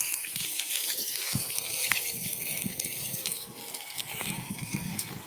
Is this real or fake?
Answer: fake